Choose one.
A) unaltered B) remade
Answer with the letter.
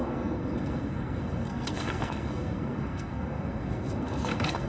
B